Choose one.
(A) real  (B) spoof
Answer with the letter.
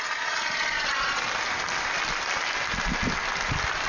A